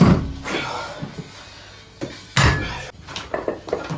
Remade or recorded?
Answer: recorded